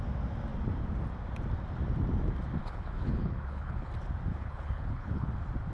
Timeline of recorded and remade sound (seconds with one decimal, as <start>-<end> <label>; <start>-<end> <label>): 0.0-2.6 recorded; 2.6-3.9 remade; 3.9-4.3 recorded; 4.3-5.3 remade; 5.3-5.7 recorded